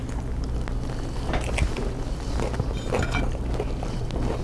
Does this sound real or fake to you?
real